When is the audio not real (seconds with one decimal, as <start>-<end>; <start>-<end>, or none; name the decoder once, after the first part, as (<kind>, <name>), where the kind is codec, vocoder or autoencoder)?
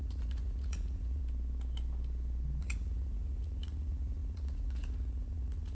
0.0-1.2 (vocoder, Vocos); 2.6-5.7